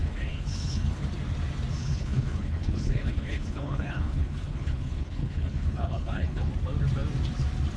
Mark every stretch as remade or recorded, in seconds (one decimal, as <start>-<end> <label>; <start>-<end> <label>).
0.0-1.0 remade; 1.0-1.8 recorded; 1.8-6.5 remade; 6.5-7.8 recorded